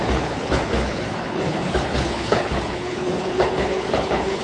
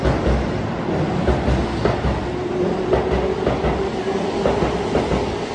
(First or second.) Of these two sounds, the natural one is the second